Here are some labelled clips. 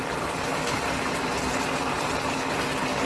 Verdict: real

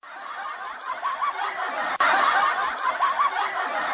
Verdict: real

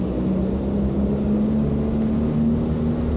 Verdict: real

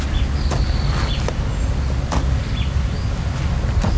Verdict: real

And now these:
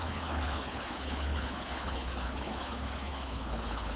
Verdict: fake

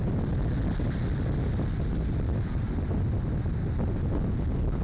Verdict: real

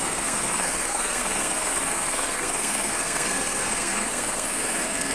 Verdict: fake